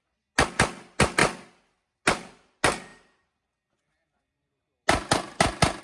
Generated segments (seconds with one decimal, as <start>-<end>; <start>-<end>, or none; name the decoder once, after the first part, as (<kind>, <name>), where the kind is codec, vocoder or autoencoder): none